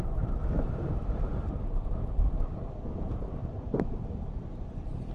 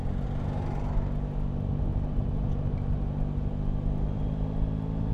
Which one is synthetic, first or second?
first